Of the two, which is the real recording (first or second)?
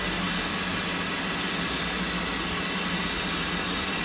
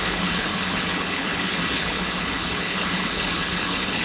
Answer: first